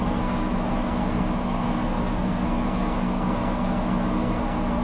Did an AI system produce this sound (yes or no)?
yes